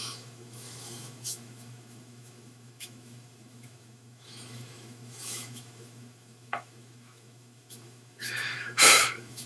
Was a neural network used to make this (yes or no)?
yes